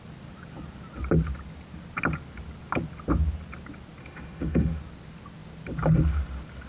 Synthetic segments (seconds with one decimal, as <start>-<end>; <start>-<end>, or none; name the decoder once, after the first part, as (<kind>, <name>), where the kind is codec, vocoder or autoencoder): 4.0-4.8 (autoencoder, DAC-VAE)